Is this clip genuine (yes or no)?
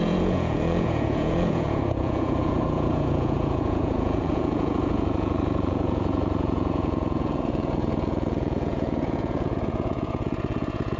no